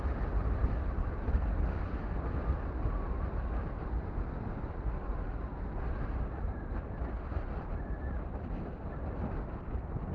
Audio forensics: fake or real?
real